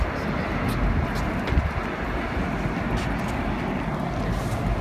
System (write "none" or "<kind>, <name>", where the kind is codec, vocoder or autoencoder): none